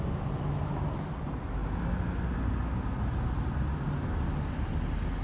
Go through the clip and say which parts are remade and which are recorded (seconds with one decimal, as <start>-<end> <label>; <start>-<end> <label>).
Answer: 0.0-5.2 recorded